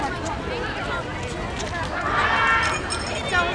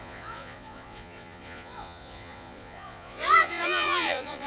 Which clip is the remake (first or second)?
second